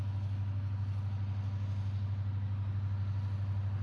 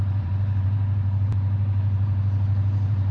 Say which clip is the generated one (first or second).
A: second